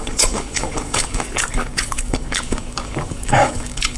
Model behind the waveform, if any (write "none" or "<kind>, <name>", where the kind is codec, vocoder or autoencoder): codec, DAC